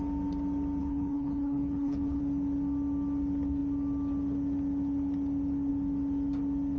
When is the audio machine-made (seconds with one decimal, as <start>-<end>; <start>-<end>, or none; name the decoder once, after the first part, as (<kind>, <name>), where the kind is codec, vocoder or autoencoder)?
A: 0.8-2.2 (codec, HILCodec)